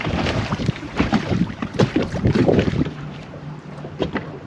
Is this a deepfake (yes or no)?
yes